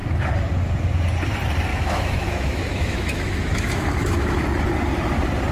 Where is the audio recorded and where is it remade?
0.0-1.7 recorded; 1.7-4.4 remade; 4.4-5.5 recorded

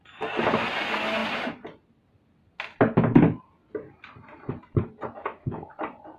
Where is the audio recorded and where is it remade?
0.0-5.2 recorded; 5.2-5.7 remade; 5.7-6.2 recorded